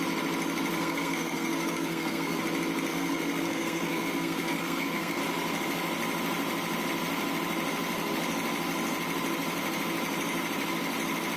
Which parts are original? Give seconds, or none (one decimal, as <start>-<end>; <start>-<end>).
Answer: 0.0-0.7; 2.4-2.9; 5.2-11.4